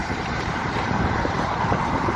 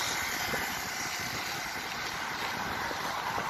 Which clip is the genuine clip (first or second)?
second